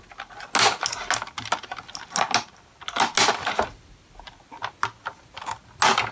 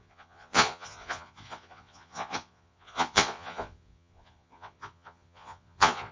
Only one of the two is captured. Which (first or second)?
first